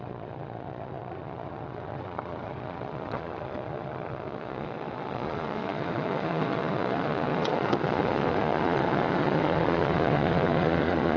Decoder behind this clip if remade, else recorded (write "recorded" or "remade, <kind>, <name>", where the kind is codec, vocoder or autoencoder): remade, vocoder, Vocos